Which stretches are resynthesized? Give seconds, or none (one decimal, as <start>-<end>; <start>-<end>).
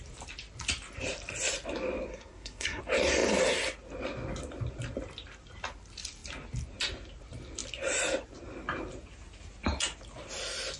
2.1-2.8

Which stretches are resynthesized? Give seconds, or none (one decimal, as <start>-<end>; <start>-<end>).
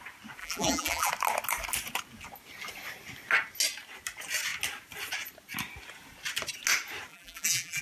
0.4-1.1; 7.1-7.8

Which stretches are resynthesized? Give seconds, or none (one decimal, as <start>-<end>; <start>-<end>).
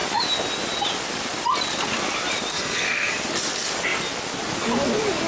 2.5-3.1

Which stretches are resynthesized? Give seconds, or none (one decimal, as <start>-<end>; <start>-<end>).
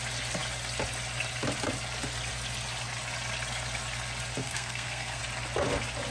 4.4-5.2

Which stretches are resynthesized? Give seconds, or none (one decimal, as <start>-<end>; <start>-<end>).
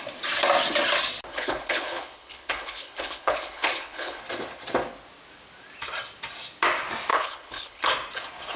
1.3-4.2; 7.1-7.9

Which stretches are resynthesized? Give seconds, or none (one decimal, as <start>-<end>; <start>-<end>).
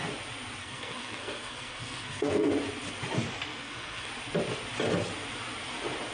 0.6-2.5; 3.5-4.1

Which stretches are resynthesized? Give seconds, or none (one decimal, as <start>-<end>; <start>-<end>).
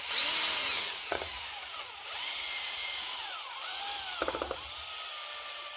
0.6-3.8